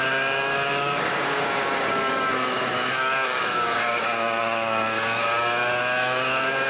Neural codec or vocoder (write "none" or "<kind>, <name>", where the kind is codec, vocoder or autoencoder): codec, DAC